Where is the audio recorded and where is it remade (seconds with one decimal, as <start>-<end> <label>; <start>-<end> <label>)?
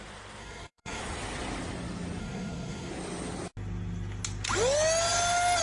0.0-0.4 recorded; 0.4-1.0 remade; 1.0-2.2 recorded; 2.2-2.9 remade; 2.9-5.6 recorded